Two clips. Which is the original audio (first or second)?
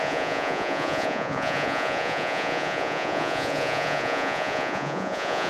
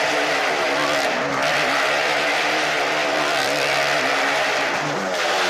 second